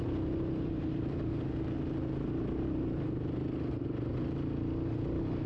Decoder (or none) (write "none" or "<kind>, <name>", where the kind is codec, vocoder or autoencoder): none